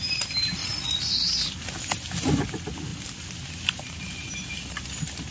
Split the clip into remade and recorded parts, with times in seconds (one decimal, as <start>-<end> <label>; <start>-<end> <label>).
0.0-0.6 recorded; 0.6-1.3 remade; 1.3-5.3 recorded